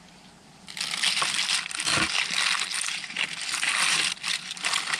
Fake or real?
real